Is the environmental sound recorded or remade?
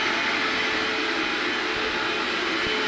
recorded